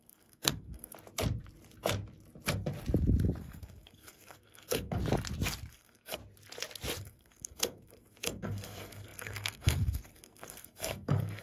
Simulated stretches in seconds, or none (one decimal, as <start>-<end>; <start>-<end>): 0.0-0.9; 3.4-5.0; 5.7-6.2; 7.0-11.4